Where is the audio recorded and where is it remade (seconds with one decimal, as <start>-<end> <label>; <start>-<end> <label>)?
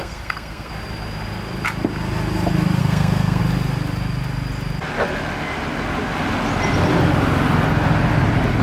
0.0-0.7 remade; 0.7-2.8 recorded; 2.8-3.4 remade; 3.4-8.6 recorded